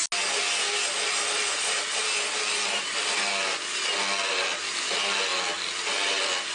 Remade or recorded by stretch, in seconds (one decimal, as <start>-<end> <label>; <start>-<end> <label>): 0.0-6.5 recorded